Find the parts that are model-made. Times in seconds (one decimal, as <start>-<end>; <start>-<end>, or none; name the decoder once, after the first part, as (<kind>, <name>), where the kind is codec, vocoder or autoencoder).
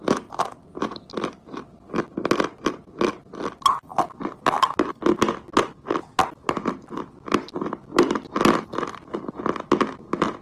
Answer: 0.7-2.0 (vocoder, BigVGAN v2)